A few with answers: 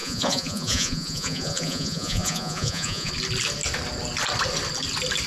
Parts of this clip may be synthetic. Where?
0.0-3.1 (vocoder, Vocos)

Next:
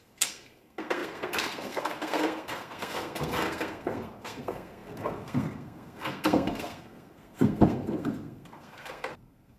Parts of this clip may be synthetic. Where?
0.0-9.6 (codec, SNAC)